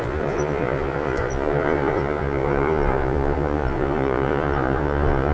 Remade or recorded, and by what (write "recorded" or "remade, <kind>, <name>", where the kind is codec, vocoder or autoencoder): remade, vocoder, Vocos